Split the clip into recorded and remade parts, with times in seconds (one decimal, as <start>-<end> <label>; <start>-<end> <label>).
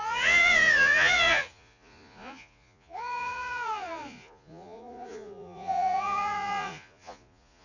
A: 0.0-7.6 remade